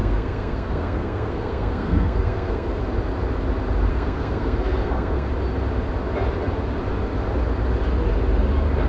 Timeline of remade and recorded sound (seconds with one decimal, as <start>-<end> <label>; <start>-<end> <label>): 0.0-2.8 remade; 2.8-3.9 recorded; 3.9-5.3 remade; 5.3-8.9 recorded